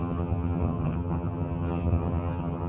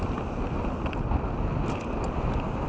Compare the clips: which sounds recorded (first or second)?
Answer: second